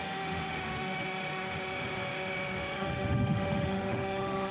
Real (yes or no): no